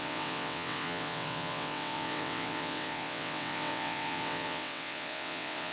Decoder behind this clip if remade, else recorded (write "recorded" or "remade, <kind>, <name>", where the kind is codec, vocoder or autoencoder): remade, vocoder, WaveNeXt